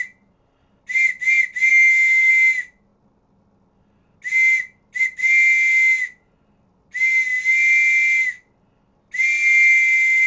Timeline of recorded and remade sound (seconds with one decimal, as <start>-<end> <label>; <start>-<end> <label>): 0.0-1.7 recorded; 1.7-2.3 remade; 2.3-10.3 recorded

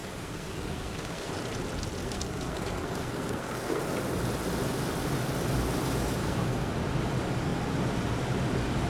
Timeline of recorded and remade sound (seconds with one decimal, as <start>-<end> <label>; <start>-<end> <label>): 0.0-1.3 remade; 1.3-2.0 recorded; 2.0-3.8 remade; 3.8-6.2 recorded; 6.2-6.7 remade; 6.7-8.9 recorded